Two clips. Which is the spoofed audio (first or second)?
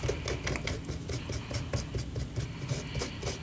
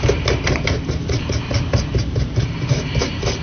second